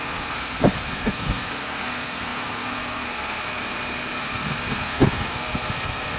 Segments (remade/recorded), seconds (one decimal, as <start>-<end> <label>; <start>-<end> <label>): 0.0-3.4 remade; 3.4-4.2 recorded; 4.2-6.2 remade